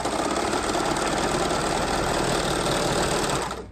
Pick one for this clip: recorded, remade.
recorded